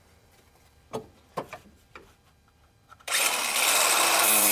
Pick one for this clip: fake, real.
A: fake